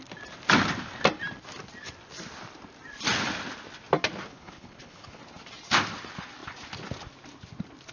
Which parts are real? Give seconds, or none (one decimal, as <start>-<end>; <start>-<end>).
0.0-4.3; 5.2-7.9